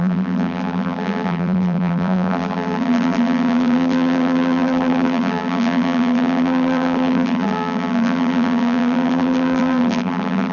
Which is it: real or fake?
fake